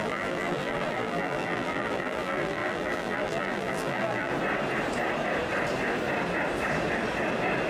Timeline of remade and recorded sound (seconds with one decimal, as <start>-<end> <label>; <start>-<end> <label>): 0.0-4.3 remade; 4.3-7.7 recorded